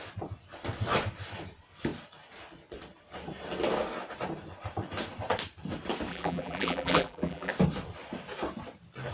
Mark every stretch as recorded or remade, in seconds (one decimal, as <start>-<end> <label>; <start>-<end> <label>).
0.0-6.1 recorded; 6.1-7.5 remade; 7.5-9.1 recorded